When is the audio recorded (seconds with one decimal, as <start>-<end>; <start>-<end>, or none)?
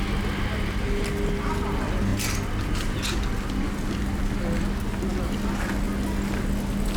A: 0.0-7.0